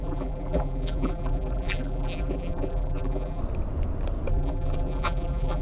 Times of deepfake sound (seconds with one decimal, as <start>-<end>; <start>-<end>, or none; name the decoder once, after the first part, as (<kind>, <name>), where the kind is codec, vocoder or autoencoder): 0.0-3.4 (vocoder, BigVGAN v2); 4.3-5.6